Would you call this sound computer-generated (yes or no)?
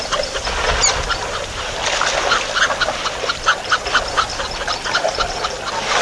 no